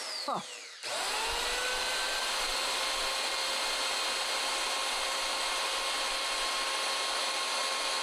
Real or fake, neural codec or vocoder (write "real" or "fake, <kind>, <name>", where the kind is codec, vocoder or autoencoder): real